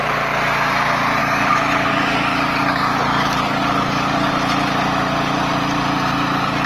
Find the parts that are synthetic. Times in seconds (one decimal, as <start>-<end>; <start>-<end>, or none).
1.2-4.3